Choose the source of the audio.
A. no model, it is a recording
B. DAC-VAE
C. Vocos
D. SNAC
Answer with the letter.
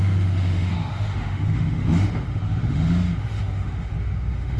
B